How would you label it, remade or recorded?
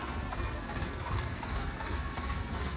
remade